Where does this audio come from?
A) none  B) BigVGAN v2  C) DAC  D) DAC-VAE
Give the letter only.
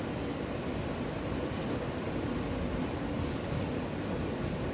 B